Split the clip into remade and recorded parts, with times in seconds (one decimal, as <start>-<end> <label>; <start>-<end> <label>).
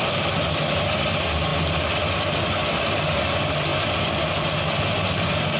0.0-5.6 recorded